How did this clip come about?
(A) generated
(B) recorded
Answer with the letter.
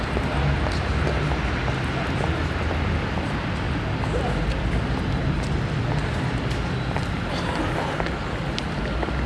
B